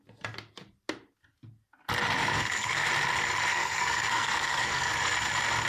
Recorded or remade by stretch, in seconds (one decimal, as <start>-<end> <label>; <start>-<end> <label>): 0.0-2.2 recorded; 2.2-2.9 remade; 2.9-3.5 recorded; 3.5-4.9 remade; 4.9-5.7 recorded